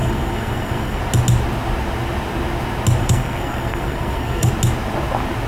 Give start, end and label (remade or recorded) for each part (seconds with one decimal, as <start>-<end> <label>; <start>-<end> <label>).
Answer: 0.0-1.0 remade; 1.0-3.0 recorded; 3.0-4.5 remade; 4.5-5.5 recorded